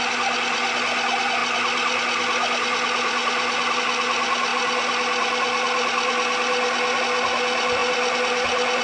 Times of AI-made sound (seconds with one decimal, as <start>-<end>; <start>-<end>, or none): 4.5-7.0